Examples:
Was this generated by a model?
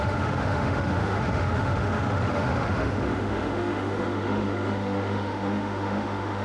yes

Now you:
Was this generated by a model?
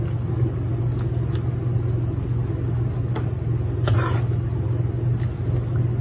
no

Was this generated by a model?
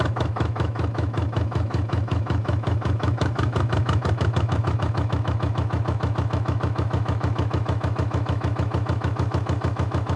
yes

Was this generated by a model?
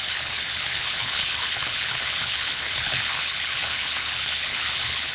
yes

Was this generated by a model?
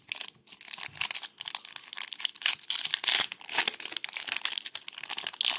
no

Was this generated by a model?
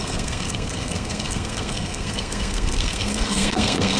yes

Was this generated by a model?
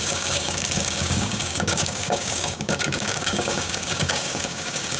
yes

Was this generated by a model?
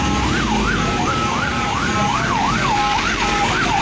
yes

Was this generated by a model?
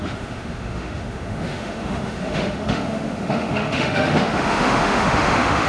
yes